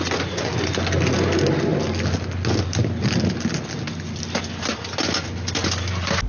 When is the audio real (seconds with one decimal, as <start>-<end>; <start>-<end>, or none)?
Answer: 0.0-6.3